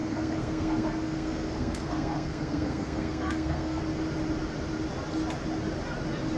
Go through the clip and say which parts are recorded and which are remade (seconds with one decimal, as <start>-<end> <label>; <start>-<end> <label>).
0.0-3.8 remade; 3.8-6.4 recorded